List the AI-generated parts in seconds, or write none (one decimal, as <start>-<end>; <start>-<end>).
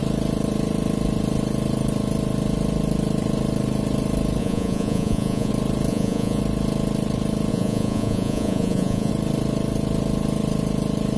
4.4-5.5; 5.9-6.4; 7.5-9.1